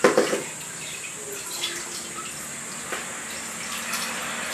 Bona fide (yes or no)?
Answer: yes